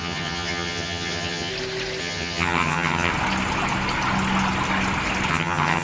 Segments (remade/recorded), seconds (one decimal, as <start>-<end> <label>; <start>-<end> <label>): 0.0-1.5 remade; 1.5-2.0 recorded; 2.0-3.1 remade; 3.1-5.3 recorded; 5.3-5.8 remade